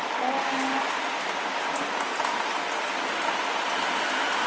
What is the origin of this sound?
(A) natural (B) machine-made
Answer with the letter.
A